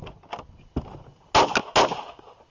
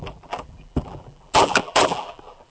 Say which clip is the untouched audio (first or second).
first